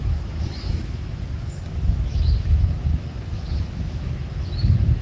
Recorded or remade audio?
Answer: remade